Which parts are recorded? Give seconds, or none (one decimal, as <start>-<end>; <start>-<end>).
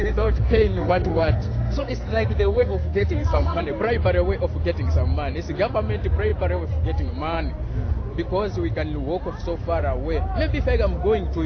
3.6-11.5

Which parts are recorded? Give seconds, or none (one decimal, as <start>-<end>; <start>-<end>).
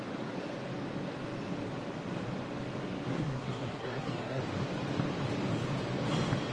0.0-3.1; 4.4-6.5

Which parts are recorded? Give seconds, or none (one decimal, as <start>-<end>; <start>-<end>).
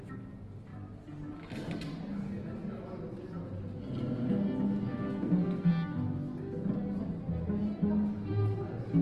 0.0-4.9; 5.7-9.0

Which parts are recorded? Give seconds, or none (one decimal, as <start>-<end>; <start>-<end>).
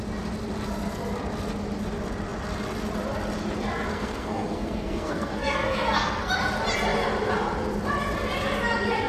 0.0-3.9; 6.3-9.1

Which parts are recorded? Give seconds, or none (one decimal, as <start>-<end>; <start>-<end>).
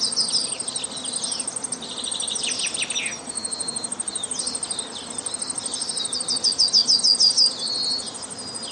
0.0-8.7